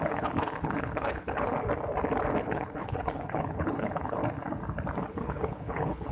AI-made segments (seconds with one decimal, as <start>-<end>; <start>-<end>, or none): 0.0-1.5; 2.4-4.2; 5.1-6.1

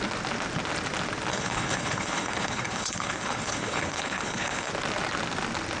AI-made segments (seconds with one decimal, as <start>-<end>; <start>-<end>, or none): 1.3-4.7

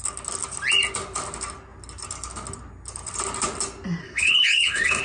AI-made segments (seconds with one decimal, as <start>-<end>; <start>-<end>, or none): 4.0-5.0